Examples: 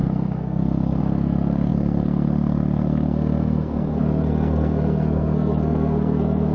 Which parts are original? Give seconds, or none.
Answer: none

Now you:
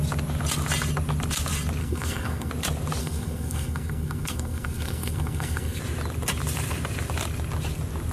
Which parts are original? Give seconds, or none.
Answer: 0.0-1.8; 2.5-3.0; 5.8-8.1

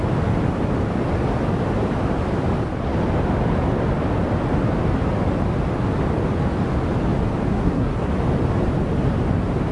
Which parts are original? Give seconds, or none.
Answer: 0.0-7.5; 8.1-9.7

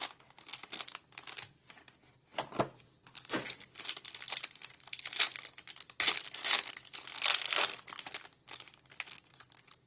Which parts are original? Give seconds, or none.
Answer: 0.0-9.9

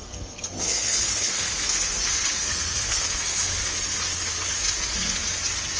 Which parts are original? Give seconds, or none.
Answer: 3.5-5.8

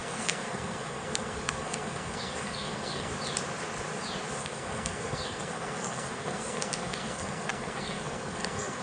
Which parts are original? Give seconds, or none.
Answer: 3.1-4.4

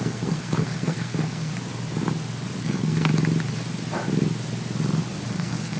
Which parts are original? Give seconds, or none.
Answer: 1.5-2.6; 3.1-5.3

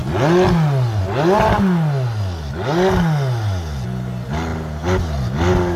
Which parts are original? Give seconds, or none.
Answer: 0.0-5.8